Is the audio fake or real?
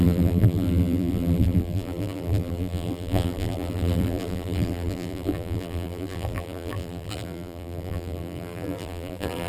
fake